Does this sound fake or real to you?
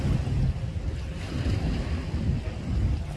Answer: real